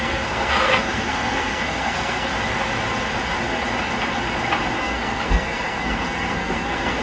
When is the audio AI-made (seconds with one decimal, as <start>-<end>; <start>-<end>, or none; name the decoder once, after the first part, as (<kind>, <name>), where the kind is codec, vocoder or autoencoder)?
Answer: 0.0-2.3 (codec, SNAC); 4.8-7.0